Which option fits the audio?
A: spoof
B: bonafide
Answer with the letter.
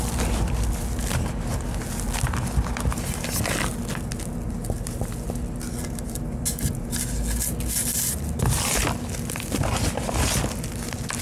B